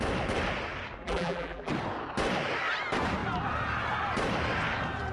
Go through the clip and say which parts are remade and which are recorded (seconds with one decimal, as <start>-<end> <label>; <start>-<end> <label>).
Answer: 0.0-1.0 recorded; 1.0-1.7 remade; 1.7-5.1 recorded